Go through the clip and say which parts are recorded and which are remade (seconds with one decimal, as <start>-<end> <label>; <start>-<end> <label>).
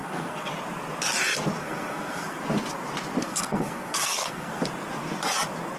0.0-0.5 remade; 0.5-1.6 recorded; 1.6-2.4 remade; 2.4-3.2 recorded; 3.2-4.6 remade; 4.6-5.8 recorded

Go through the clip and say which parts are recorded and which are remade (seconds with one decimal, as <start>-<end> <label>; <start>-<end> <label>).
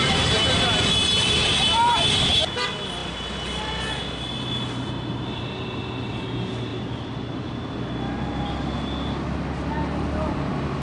0.0-10.8 recorded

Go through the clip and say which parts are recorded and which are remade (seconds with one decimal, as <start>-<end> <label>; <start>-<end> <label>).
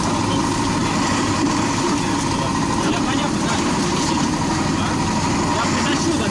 0.0-0.8 recorded; 0.8-2.0 remade; 2.0-2.5 recorded; 2.5-4.4 remade; 4.4-6.3 recorded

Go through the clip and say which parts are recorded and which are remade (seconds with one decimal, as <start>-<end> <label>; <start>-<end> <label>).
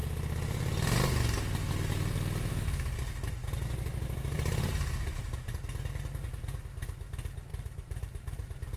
0.0-3.4 recorded; 3.4-5.6 remade; 5.6-7.5 recorded; 7.5-8.8 remade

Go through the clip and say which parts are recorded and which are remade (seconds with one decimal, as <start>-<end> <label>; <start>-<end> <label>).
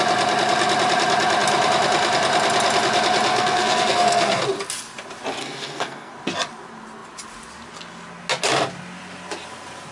0.0-3.3 recorded; 3.3-4.4 remade; 4.4-5.4 recorded; 5.4-6.1 remade; 6.1-9.9 recorded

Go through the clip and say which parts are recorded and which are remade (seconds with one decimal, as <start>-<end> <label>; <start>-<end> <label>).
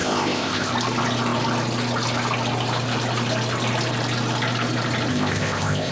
0.0-0.7 remade; 0.7-5.1 recorded; 5.1-5.9 remade